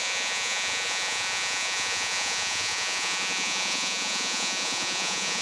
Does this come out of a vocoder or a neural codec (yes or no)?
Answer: yes